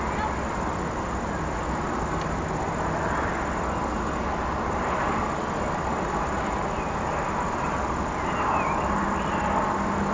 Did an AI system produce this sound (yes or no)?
no